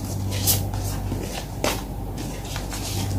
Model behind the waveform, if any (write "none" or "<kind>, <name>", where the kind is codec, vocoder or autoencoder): none